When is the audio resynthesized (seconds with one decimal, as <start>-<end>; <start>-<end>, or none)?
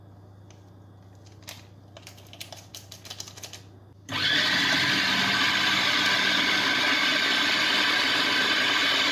none